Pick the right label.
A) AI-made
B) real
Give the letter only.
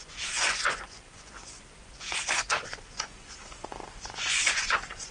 A